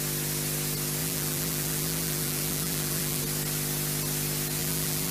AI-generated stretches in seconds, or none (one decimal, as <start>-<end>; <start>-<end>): 1.0-3.2; 4.6-5.1